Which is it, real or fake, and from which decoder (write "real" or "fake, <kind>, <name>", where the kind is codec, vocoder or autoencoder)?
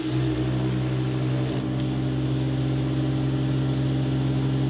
real